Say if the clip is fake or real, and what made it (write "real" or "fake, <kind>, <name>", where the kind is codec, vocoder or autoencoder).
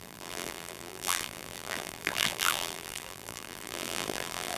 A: fake, vocoder, BigVGAN v2